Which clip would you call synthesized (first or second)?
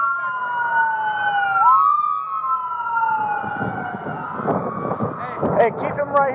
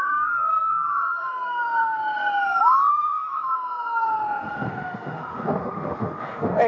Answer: second